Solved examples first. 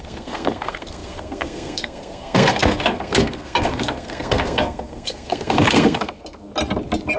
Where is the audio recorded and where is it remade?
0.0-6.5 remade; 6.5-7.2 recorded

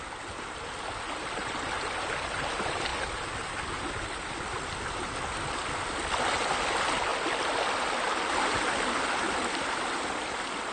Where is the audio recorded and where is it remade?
0.0-10.7 recorded

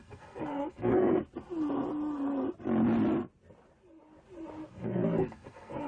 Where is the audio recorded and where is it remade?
0.0-1.2 remade; 1.2-4.7 recorded; 4.7-5.9 remade

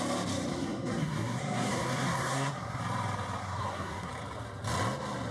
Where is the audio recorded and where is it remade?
0.0-0.5 recorded; 0.5-2.8 remade; 2.8-3.4 recorded; 3.4-4.1 remade; 4.1-5.3 recorded

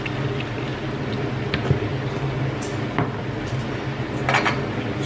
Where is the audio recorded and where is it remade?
0.0-5.1 recorded